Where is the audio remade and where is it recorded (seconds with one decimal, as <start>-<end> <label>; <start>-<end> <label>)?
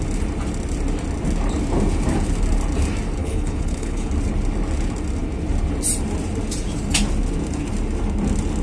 0.0-3.2 recorded; 3.2-4.1 remade; 4.1-8.6 recorded